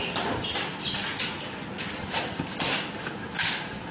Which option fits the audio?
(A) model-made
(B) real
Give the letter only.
B